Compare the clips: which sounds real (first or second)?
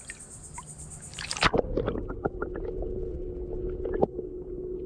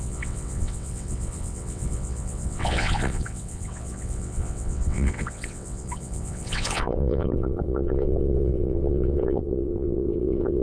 first